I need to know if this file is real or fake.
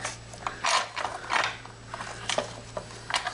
real